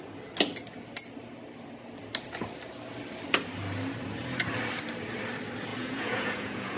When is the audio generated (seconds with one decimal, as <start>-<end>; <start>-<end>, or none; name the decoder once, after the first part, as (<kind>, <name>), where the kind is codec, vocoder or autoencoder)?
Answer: 5.7-6.8 (vocoder, Vocos)